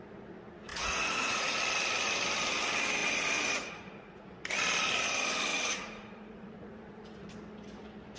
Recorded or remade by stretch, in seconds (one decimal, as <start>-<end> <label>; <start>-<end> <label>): 0.0-0.7 recorded; 0.7-1.6 remade; 1.6-3.0 recorded; 3.0-4.3 remade; 4.3-5.5 recorded; 5.5-7.3 remade; 7.3-8.2 recorded